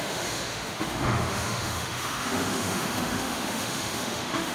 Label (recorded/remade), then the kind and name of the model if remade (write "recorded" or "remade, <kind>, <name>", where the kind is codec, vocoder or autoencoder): remade, autoencoder, DAC-VAE